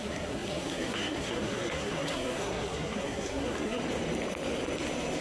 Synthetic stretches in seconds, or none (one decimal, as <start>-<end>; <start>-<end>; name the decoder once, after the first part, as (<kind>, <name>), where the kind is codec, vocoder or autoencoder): 0.0-3.8 (codec, SNAC)